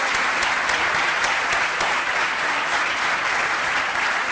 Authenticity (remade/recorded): recorded